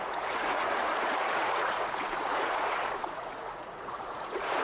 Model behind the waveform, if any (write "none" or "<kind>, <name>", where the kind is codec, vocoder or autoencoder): vocoder, Vocos